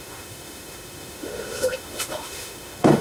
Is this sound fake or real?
fake